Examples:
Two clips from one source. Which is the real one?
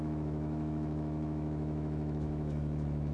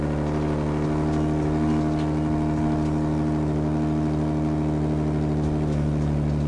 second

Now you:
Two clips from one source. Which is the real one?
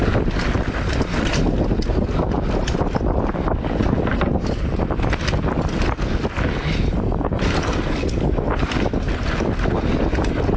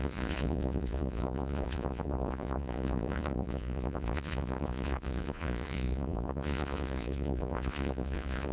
first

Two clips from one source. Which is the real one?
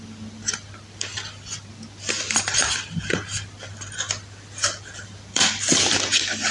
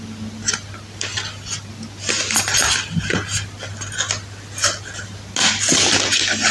second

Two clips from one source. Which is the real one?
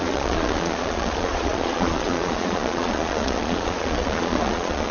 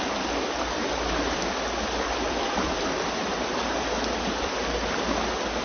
second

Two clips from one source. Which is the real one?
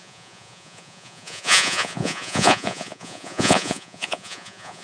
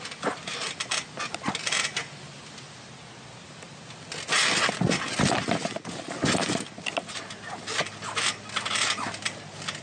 second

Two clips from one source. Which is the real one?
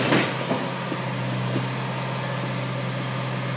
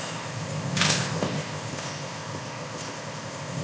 first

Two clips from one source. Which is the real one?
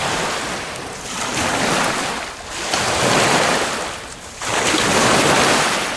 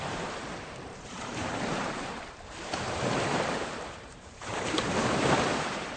first